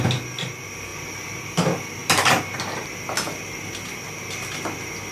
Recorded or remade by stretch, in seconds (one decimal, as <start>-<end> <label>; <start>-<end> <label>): 0.0-5.1 recorded